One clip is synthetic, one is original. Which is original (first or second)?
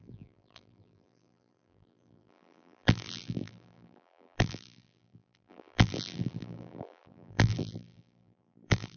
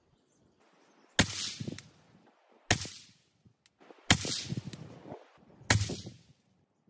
second